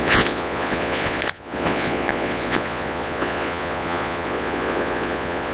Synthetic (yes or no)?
yes